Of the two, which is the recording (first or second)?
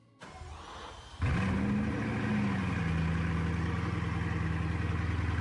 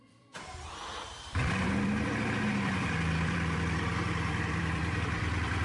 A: first